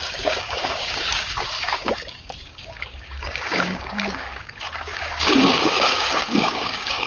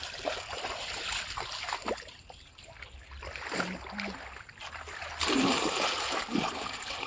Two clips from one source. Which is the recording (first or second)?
second